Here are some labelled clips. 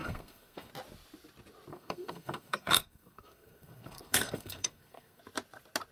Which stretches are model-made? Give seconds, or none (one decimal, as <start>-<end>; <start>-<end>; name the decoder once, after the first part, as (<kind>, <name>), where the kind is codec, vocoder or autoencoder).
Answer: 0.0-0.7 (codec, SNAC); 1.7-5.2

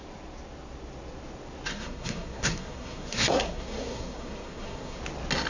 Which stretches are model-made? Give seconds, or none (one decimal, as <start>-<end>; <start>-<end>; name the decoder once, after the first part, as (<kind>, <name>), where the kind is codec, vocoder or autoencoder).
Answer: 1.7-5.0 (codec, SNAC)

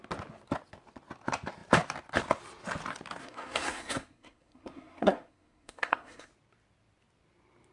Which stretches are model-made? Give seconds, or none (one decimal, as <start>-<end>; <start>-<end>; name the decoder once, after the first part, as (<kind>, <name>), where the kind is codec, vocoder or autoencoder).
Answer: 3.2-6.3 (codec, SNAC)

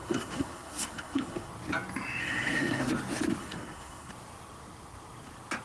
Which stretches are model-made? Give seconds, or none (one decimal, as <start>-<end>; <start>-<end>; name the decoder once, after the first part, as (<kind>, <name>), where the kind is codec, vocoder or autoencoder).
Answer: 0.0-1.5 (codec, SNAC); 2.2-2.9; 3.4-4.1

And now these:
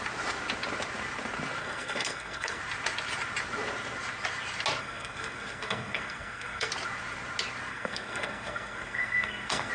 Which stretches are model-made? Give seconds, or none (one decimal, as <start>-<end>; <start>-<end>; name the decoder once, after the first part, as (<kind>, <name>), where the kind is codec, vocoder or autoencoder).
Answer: 1.6-2.6 (codec, SNAC); 4.8-6.7; 7.7-9.7